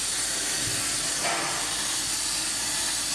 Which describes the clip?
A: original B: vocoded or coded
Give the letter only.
A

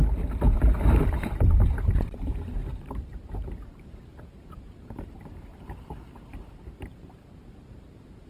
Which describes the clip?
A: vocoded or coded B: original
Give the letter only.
A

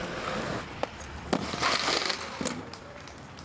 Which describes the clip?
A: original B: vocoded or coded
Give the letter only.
A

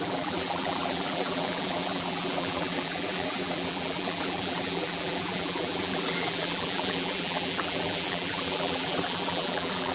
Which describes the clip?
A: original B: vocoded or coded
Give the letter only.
B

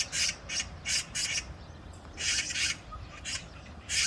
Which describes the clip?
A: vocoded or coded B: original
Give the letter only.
A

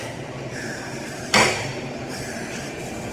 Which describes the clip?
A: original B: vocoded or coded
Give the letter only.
B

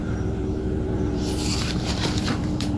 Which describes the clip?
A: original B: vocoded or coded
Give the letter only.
B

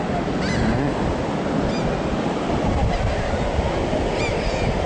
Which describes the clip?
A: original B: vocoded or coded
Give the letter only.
A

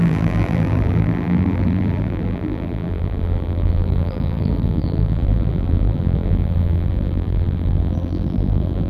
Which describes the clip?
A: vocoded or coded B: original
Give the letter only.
A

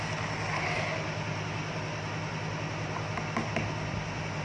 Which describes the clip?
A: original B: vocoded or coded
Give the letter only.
A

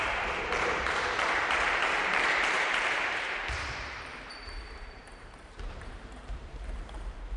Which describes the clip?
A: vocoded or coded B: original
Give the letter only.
A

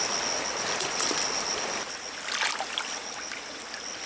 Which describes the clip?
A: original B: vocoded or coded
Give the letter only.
A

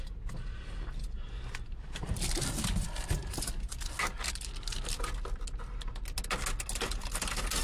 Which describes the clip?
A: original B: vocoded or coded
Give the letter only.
A